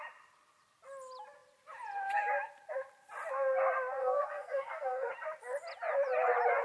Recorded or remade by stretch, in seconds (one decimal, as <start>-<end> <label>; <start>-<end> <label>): 0.0-4.0 recorded; 4.0-5.1 remade; 5.1-6.6 recorded